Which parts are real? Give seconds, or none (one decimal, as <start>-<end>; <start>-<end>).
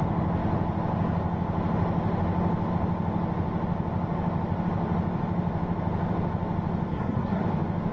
0.0-6.9; 7.4-7.9